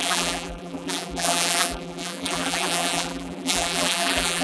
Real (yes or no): no